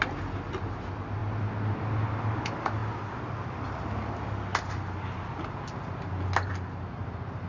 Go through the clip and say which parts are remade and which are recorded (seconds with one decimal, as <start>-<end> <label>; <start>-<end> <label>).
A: 0.0-7.5 recorded